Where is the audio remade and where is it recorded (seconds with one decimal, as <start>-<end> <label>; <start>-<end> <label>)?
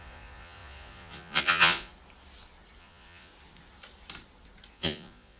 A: 0.0-1.9 remade; 1.9-2.8 recorded; 2.8-3.3 remade; 3.3-4.7 recorded; 4.7-5.4 remade